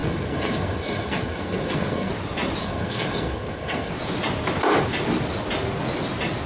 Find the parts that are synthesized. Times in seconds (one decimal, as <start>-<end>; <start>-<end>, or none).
0.0-2.1; 2.6-3.9